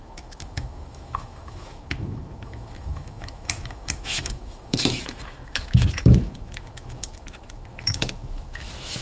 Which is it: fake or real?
fake